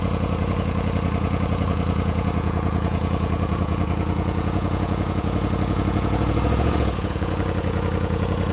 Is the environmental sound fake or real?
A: fake